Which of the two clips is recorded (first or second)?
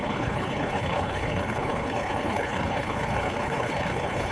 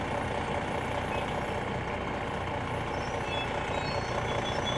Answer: second